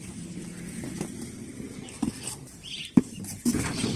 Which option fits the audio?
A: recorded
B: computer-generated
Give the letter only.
B